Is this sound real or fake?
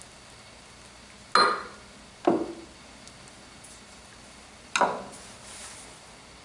real